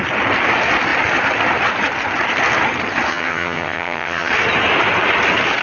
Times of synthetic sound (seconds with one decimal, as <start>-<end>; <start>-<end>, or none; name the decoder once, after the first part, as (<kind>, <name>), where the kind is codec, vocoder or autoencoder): 3.1-4.3 (vocoder, HiFi-GAN)